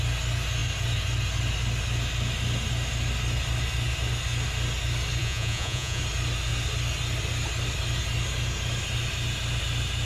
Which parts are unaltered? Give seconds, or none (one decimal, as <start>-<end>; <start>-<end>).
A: 0.0-5.2; 6.0-10.1